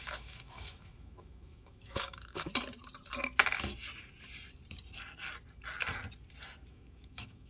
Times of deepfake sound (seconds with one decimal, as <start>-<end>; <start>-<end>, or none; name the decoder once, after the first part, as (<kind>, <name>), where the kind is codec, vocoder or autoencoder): 0.0-2.5 (autoencoder, DAC-VAE); 6.7-7.5